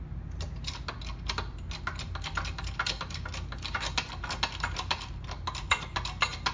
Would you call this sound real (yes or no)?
yes